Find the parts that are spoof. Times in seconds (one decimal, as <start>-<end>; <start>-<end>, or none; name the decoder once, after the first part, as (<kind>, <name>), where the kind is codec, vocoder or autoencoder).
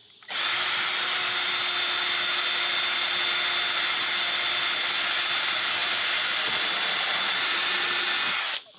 none